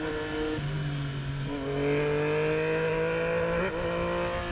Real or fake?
real